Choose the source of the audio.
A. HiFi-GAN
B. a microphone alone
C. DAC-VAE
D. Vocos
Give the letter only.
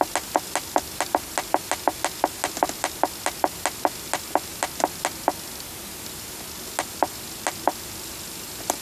B